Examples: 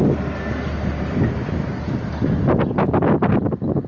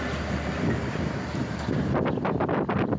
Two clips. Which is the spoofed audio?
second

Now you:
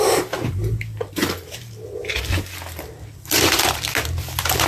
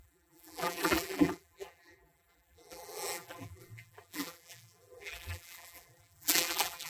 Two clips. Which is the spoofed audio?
second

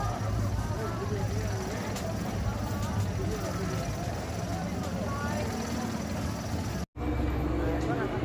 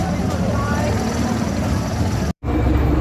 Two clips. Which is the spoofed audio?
second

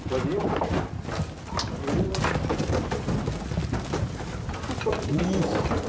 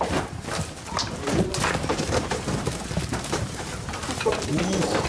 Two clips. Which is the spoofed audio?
second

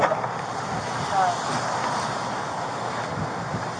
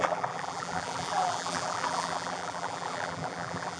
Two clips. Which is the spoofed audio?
second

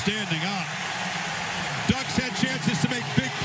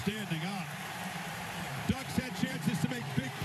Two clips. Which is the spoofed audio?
second